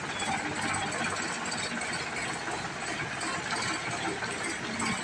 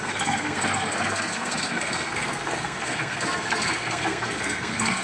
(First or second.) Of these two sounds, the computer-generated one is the second